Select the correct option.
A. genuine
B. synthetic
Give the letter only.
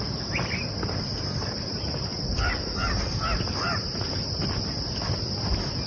A